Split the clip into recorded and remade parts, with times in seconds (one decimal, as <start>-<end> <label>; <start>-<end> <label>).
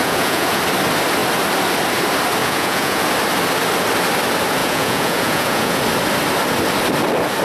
0.0-0.6 remade; 0.6-2.4 recorded; 2.4-3.0 remade; 3.0-4.6 recorded; 4.6-5.8 remade; 5.8-7.4 recorded